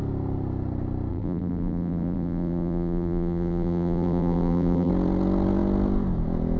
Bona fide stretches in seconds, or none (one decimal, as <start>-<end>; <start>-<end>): 0.0-1.1; 4.9-6.6